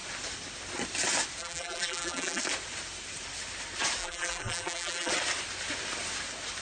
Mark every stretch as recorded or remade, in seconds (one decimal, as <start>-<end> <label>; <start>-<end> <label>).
0.0-1.4 recorded; 1.4-2.4 remade; 2.4-4.0 recorded; 4.0-5.1 remade; 5.1-6.6 recorded